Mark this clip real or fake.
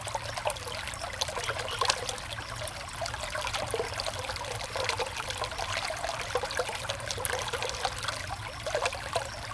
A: real